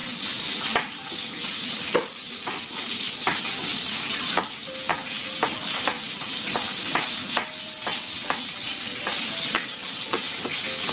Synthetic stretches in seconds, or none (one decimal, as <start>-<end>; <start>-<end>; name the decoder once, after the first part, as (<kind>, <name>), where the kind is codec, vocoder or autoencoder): none

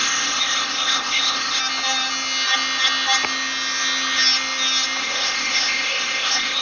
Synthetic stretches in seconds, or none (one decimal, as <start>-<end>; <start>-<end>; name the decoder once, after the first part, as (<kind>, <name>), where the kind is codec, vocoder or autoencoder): 0.0-1.6 (codec, ZipCodec); 5.0-6.6

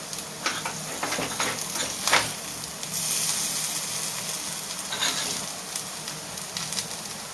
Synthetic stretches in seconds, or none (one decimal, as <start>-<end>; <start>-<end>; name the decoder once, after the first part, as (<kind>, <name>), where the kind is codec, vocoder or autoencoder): none

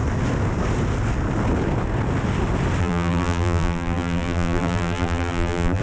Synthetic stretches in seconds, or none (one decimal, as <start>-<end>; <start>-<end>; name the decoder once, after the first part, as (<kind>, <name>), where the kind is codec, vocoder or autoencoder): 2.8-5.8 (vocoder, BigVGAN v2)